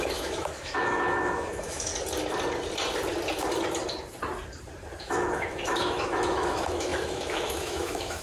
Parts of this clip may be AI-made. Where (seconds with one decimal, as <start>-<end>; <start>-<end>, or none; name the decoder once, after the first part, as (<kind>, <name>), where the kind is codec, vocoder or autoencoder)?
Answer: 0.0-1.9 (autoencoder, DAC-VAE); 5.0-8.2

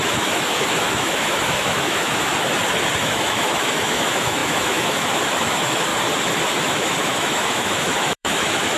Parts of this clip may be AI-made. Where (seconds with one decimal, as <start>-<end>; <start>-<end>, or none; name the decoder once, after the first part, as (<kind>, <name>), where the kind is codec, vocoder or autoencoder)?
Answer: 0.0-2.3 (autoencoder, DAC-VAE); 3.0-5.9; 6.6-8.8

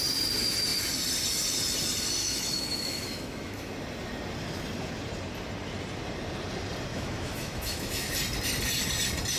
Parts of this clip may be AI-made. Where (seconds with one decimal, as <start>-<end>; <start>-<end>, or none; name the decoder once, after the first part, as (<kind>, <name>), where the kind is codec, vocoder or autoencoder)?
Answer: 2.2-3.7 (autoencoder, DAC-VAE); 6.9-8.1

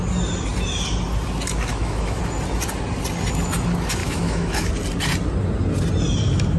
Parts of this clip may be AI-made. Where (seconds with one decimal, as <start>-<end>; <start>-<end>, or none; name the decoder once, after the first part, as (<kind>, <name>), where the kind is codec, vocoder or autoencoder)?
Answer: 1.7-2.2 (autoencoder, DAC-VAE); 4.0-4.7

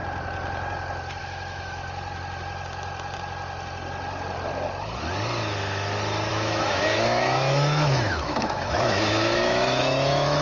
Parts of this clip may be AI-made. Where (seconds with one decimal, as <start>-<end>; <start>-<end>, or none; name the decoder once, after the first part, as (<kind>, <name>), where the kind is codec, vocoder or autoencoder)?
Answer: 1.2-1.8 (autoencoder, DAC-VAE); 6.3-10.4